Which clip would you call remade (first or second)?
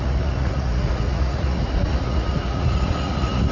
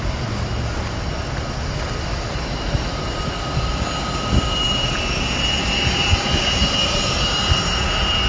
first